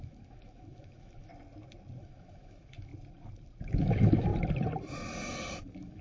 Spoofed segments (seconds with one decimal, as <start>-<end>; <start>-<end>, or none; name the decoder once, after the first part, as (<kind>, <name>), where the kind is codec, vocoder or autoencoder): 0.0-1.3 (autoencoder, DAC-VAE); 2.0-2.9; 3.8-4.3; 5.6-6.0

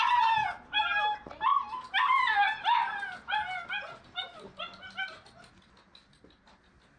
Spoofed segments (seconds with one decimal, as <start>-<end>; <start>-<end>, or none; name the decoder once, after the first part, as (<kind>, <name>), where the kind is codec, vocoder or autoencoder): none